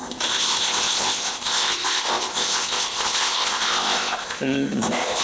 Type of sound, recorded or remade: remade